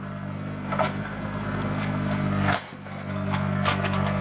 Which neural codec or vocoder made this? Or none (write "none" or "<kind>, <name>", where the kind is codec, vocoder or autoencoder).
codec, SNAC